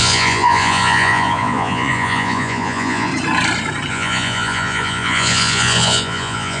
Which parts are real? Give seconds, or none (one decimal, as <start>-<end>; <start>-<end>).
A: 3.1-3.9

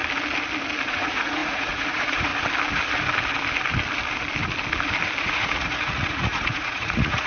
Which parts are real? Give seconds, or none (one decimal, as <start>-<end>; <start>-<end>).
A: 0.0-0.9; 2.3-5.2

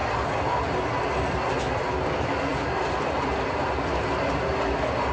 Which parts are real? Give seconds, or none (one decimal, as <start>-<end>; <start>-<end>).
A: 0.0-5.1

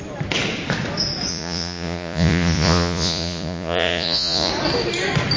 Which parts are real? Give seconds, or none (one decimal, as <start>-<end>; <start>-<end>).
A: 0.0-1.3; 4.5-5.4

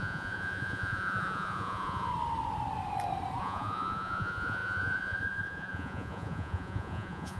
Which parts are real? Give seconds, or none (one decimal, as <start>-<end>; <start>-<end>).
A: 2.1-3.4

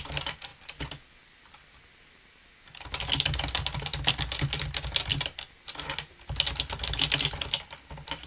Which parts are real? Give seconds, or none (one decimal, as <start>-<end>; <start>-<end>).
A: 0.0-8.3

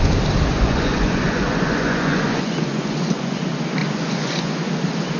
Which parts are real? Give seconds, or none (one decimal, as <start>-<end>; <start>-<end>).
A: 0.0-0.5; 3.4-3.8; 4.7-5.2

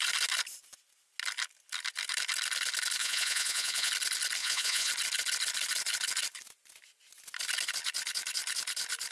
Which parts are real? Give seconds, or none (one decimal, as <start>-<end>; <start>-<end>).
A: 0.0-3.0; 3.9-4.4; 4.9-9.1